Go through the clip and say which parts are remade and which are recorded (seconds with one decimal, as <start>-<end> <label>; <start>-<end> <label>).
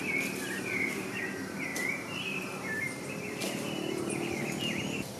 0.0-0.4 recorded; 0.4-1.2 remade; 1.2-1.7 recorded; 1.7-4.8 remade; 4.8-5.2 recorded